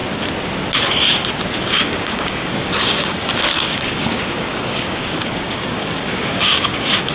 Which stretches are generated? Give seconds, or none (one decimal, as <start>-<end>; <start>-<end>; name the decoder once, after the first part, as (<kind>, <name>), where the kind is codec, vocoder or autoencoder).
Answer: 1.6-7.1 (codec, DAC)